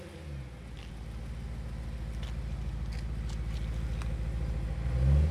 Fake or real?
real